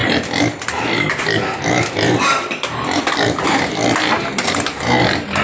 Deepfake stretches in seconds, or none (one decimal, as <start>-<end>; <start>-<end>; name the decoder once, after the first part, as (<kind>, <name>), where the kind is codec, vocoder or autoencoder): none